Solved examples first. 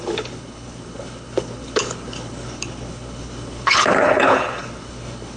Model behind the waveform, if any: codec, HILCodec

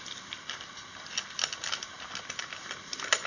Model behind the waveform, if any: none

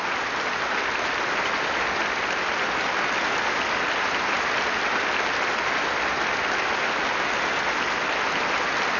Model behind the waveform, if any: none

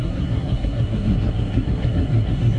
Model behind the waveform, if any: codec, SNAC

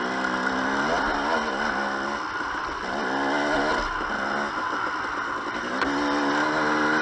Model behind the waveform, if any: none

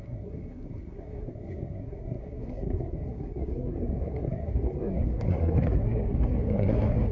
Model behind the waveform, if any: codec, SNAC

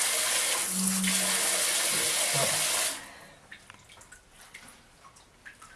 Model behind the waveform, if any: none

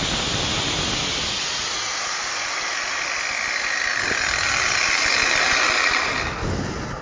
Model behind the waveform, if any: none